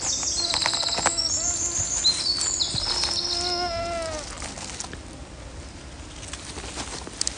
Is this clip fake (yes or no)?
no